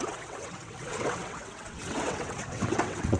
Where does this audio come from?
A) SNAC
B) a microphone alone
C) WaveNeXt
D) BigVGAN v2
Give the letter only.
C